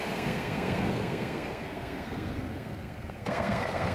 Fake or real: fake